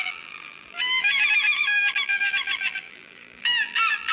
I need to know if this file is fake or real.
fake